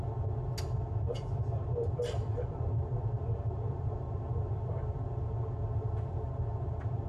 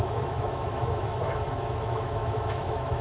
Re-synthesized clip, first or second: second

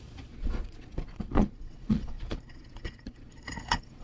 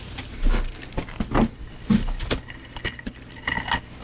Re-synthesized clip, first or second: first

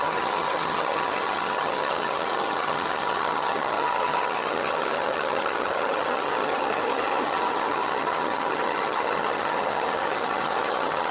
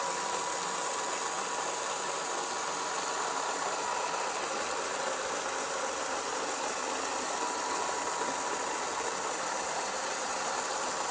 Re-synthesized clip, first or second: first